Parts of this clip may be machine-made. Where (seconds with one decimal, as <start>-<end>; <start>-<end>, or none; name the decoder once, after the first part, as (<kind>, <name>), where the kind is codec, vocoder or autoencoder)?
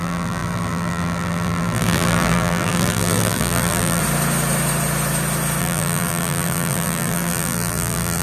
0.0-4.0 (vocoder, BigVGAN v2); 5.6-8.2